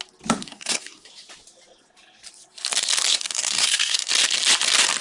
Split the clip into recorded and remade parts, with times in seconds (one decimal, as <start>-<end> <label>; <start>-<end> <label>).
0.0-0.4 recorded; 0.4-1.1 remade; 1.1-3.1 recorded; 3.1-4.1 remade; 4.1-5.0 recorded